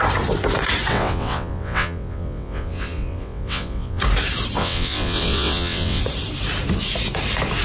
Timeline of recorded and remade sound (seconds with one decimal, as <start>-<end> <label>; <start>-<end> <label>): 0.0-0.9 recorded; 0.9-4.0 remade; 4.0-4.6 recorded; 4.6-6.0 remade; 6.0-7.6 recorded